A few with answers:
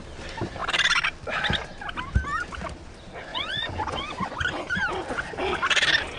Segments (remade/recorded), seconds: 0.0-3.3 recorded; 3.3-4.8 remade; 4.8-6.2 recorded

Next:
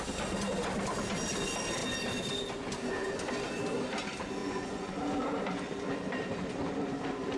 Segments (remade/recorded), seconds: 0.0-4.4 recorded; 4.4-4.9 remade; 4.9-7.4 recorded

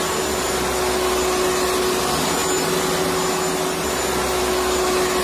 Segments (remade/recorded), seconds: 0.0-5.2 recorded

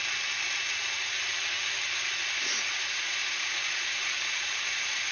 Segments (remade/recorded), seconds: 0.0-2.7 recorded; 2.7-5.1 remade

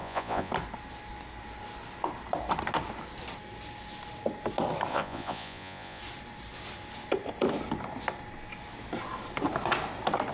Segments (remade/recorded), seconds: 0.0-0.5 remade; 0.5-4.9 recorded; 4.9-6.0 remade; 6.0-10.3 recorded

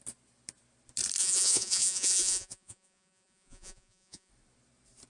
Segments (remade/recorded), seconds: 0.0-1.2 recorded; 1.2-4.3 remade; 4.3-5.1 recorded

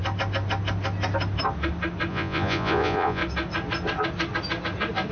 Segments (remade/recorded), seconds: 0.0-2.1 recorded; 2.1-3.2 remade; 3.2-5.1 recorded

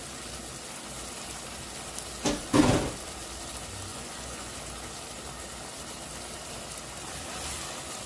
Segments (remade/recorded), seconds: 0.0-3.9 recorded; 3.9-4.5 remade; 4.5-8.1 recorded